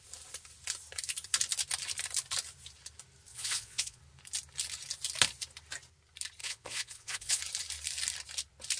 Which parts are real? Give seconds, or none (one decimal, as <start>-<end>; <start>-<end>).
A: 0.0-3.3; 4.0-6.4; 7.4-8.8